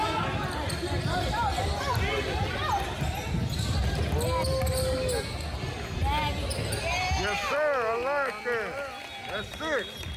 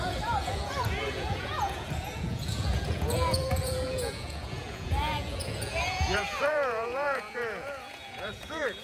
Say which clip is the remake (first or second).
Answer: second